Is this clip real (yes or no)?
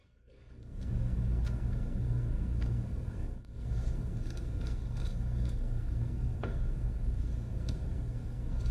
no